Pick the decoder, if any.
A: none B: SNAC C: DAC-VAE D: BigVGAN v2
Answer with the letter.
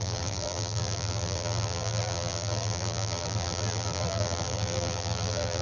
D